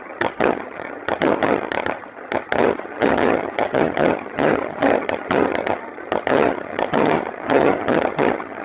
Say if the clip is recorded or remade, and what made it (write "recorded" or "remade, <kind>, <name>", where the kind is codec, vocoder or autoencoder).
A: remade, vocoder, HiFi-GAN